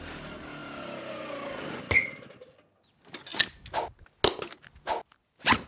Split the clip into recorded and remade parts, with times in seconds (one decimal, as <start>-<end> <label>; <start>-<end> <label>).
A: 0.0-5.7 recorded